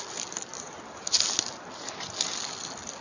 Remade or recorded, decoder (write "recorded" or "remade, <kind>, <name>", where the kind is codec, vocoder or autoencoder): recorded